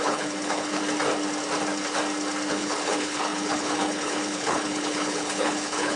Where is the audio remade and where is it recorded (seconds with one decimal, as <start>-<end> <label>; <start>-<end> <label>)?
0.0-0.8 remade; 0.8-2.5 recorded; 2.5-6.0 remade